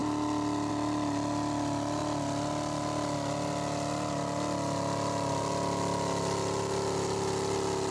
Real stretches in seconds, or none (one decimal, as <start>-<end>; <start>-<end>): 0.0-7.9